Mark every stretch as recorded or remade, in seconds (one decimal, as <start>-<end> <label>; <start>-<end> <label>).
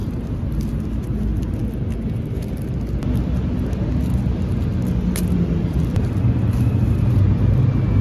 0.0-8.0 recorded